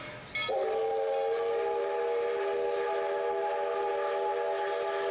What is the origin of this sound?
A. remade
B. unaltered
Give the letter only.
B